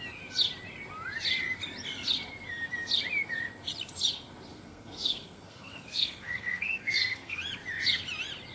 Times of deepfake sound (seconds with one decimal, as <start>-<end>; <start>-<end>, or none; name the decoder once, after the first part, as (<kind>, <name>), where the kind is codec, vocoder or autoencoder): 4.5-7.4 (codec, SNAC)